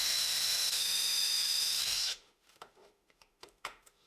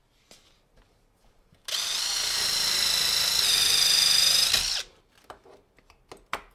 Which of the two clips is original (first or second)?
second